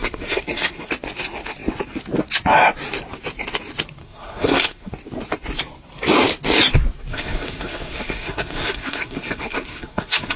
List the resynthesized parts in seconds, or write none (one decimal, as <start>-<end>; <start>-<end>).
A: 0.0-0.9; 4.0-4.9; 7.1-10.4